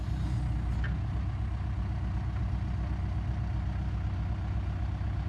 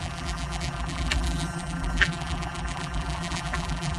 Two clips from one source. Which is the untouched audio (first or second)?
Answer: first